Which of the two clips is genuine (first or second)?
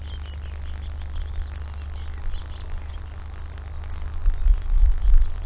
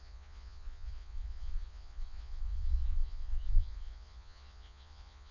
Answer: first